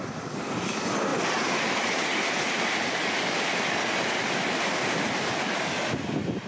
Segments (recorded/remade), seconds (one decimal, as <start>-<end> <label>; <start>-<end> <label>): 0.0-6.5 recorded